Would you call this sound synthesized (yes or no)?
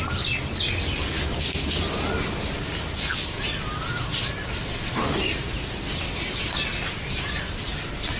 no